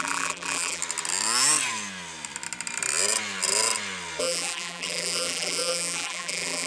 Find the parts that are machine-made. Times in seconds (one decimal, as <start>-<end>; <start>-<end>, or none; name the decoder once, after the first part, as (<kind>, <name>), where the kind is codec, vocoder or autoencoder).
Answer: 0.0-0.8 (vocoder, BigVGAN v2); 4.2-6.7